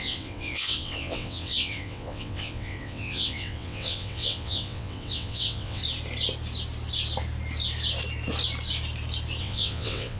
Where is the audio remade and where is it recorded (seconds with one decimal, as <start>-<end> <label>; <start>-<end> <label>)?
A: 0.0-5.8 remade; 5.8-9.4 recorded; 9.4-10.2 remade